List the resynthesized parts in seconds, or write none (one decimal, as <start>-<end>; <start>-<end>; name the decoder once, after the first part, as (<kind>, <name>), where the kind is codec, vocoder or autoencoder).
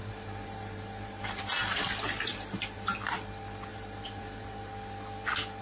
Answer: 0.0-1.4 (vocoder, BigVGAN v2); 2.3-2.9; 3.7-4.7